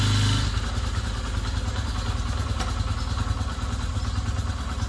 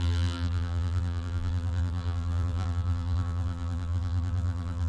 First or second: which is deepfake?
second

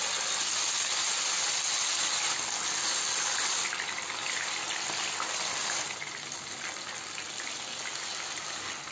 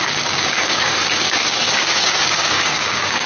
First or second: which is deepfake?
second